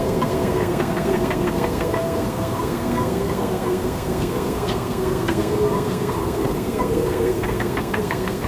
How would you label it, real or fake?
fake